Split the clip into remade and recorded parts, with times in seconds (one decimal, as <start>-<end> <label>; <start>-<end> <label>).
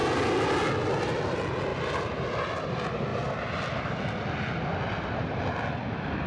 0.0-6.3 recorded